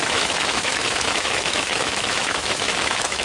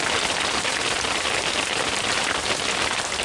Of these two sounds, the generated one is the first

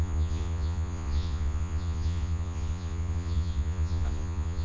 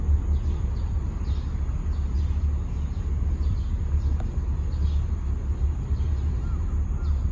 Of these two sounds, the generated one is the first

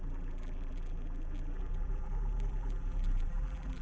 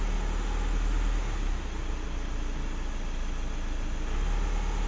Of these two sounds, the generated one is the first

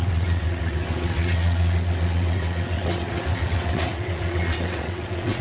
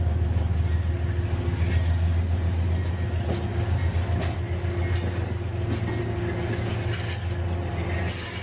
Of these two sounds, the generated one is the first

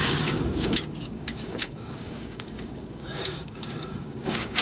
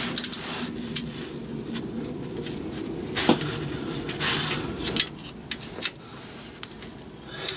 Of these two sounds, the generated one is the first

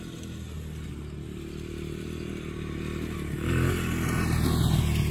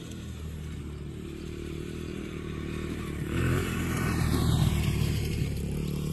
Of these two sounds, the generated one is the second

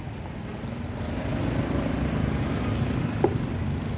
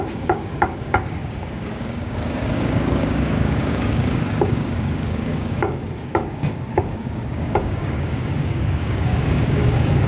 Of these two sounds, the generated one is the second